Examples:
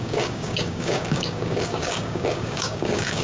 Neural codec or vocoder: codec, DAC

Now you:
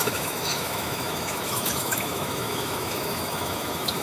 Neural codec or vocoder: autoencoder, DAC-VAE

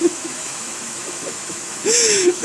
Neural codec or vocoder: autoencoder, DAC-VAE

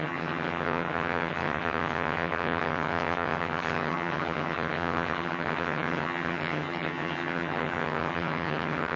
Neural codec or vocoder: vocoder, HiFi-GAN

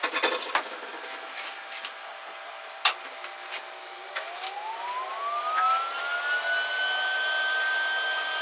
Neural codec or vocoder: none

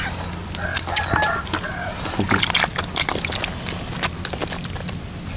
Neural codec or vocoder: none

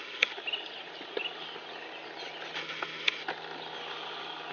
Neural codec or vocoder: none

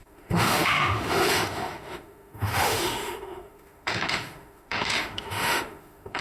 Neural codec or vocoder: autoencoder, DAC-VAE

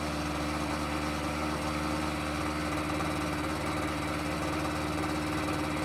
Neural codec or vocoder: none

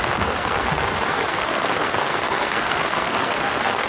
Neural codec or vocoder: codec, SNAC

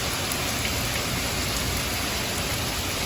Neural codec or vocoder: none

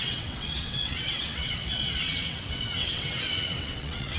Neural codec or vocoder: vocoder, WaveNeXt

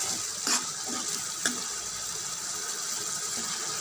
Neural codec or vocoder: none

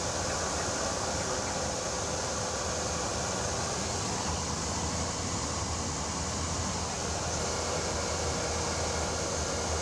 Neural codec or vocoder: none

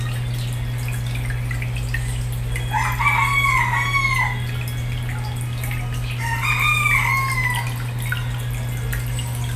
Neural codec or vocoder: none